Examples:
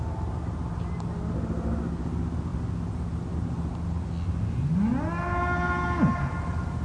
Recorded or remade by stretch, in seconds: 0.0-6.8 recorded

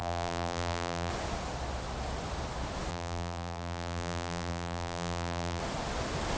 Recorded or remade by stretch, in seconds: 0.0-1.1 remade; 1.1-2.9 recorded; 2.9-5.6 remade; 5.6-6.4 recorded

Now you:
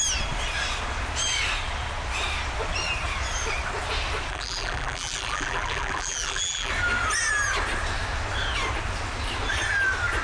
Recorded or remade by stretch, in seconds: 0.0-4.3 recorded; 4.3-6.7 remade; 6.7-10.2 recorded

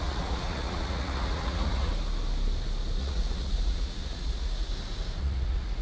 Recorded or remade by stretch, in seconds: 0.0-1.9 remade; 1.9-3.0 recorded; 3.0-4.7 remade; 4.7-5.2 recorded; 5.2-5.8 remade

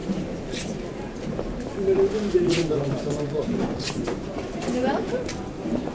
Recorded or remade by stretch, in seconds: 0.0-5.9 remade

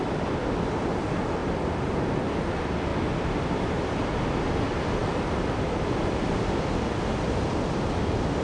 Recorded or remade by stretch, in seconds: 0.0-8.4 recorded

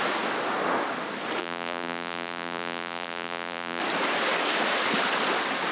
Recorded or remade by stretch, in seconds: 0.0-1.4 recorded; 1.4-3.8 remade; 3.8-5.7 recorded